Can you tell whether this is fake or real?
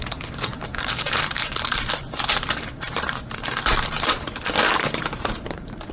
fake